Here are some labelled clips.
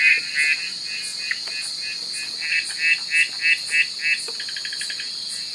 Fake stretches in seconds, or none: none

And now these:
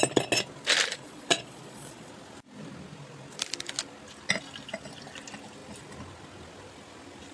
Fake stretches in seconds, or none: 0.9-2.1 (vocoder, Vocos)

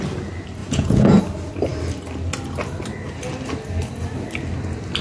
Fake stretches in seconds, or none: 0.6-1.2 (vocoder, Vocos)

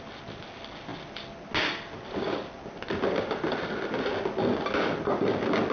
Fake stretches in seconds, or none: none

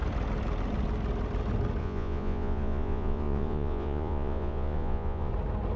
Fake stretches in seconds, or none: 1.8-5.3 (vocoder, Vocos)

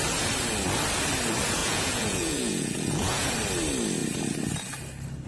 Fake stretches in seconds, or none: 1.6-3.3 (vocoder, Vocos)